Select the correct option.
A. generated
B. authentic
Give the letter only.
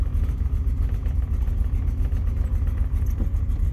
B